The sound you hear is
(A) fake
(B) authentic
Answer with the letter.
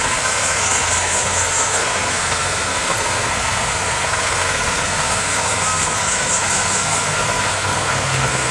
A